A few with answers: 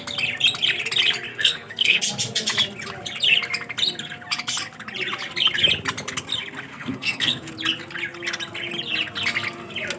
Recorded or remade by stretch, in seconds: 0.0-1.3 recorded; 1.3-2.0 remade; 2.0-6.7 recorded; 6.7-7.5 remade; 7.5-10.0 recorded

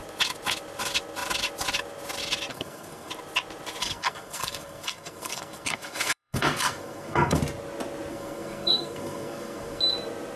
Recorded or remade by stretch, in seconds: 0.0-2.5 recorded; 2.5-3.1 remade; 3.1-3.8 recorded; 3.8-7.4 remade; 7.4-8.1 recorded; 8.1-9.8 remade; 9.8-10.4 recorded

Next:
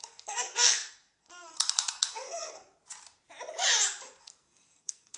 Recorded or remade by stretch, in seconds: 0.0-2.8 remade; 2.8-4.2 recorded; 4.2-5.2 remade

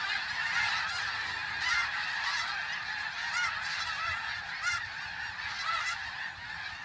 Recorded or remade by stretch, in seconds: 0.0-6.8 recorded

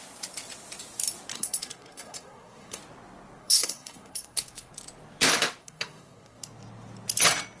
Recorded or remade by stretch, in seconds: 0.0-1.3 recorded; 1.3-2.8 remade; 2.8-3.4 recorded; 3.4-4.7 remade; 4.7-5.6 recorded; 5.6-6.4 remade; 6.4-7.6 recorded

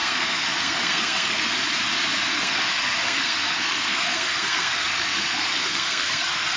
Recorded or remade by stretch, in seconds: 0.0-1.5 remade; 1.5-2.3 recorded; 2.3-6.6 remade

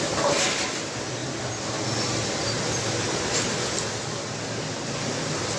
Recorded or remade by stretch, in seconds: 0.0-5.6 recorded

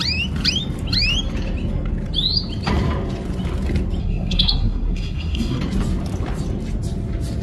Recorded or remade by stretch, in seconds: 0.0-4.0 recorded; 4.0-5.6 remade; 5.6-7.4 recorded